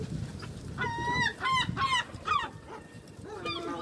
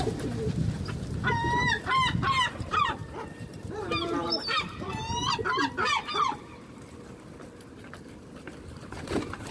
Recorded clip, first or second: first